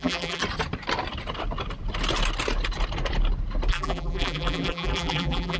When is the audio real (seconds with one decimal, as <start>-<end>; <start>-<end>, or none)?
0.4-3.7